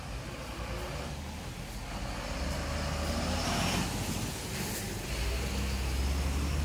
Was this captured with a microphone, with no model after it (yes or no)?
yes